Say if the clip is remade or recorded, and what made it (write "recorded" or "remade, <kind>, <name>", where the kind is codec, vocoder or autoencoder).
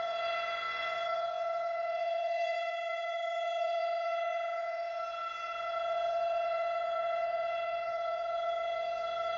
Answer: remade, vocoder, Vocos